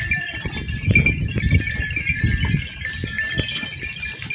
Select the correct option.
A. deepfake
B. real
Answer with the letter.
B